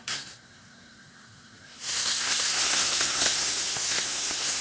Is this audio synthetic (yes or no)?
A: yes